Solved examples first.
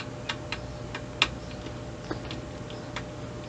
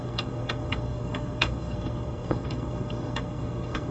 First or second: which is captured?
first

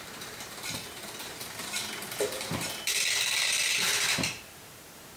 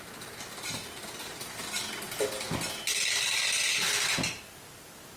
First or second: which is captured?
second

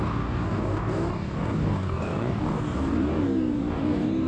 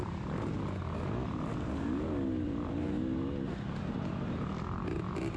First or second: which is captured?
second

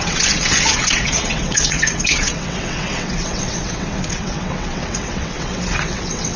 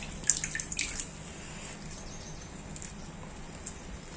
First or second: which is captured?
second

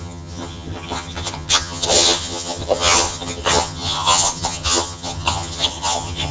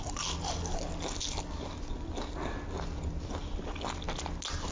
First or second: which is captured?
second